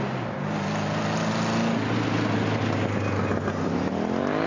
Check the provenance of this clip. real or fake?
real